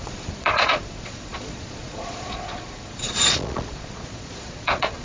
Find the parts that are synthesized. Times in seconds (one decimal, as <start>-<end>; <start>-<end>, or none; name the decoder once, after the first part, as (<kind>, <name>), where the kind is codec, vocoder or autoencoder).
0.0-5.0 (vocoder, Vocos)